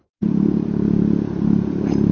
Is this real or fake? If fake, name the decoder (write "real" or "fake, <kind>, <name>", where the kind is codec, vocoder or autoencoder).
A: fake, vocoder, Vocos